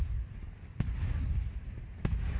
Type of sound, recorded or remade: recorded